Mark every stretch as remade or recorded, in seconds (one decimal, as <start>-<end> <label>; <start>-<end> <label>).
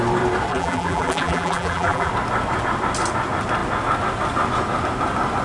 0.0-0.5 recorded; 0.5-2.1 remade; 2.1-5.4 recorded